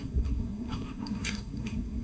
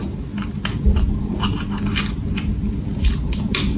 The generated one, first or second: first